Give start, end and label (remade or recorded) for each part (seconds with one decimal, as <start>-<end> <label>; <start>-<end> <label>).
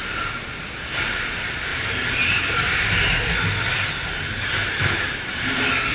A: 0.0-1.7 recorded; 1.7-3.3 remade; 3.3-5.9 recorded